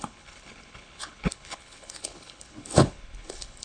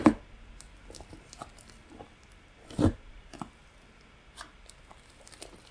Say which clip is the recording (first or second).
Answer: second